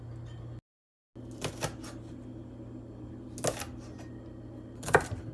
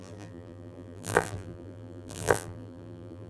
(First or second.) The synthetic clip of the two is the second